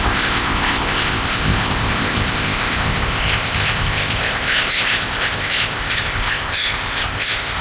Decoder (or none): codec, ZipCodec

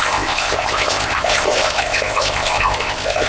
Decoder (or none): codec, ZipCodec